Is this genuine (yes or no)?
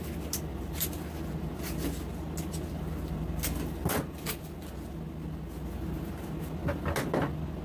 yes